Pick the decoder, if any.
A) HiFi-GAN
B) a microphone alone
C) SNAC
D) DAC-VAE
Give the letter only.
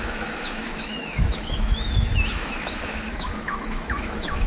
D